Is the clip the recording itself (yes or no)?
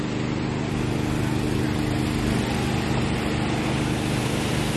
yes